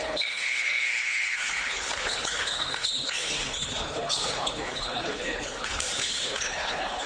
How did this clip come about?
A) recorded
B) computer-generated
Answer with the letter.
B